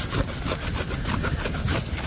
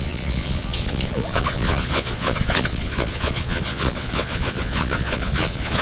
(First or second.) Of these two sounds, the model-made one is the second